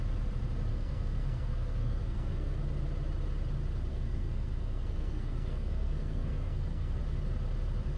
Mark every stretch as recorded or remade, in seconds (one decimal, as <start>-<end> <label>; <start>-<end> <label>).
0.0-0.7 recorded; 0.7-2.6 remade; 2.6-3.9 recorded; 3.9-7.0 remade; 7.0-8.0 recorded